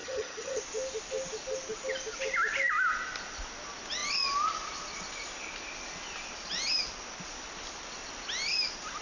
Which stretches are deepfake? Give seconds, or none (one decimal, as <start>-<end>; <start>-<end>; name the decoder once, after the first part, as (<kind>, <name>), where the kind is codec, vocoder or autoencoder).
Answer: 0.0-0.6 (vocoder, HiFi-GAN)